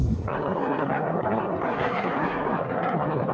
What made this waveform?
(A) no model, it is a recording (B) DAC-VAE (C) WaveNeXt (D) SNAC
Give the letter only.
D